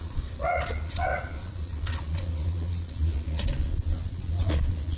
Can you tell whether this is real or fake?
fake